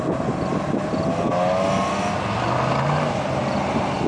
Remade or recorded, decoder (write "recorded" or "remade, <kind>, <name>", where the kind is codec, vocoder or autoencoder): recorded